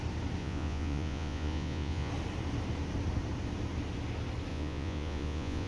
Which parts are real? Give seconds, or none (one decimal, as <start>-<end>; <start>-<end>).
0.0-0.4; 2.1-4.5